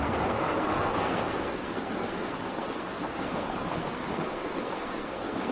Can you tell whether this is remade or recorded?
remade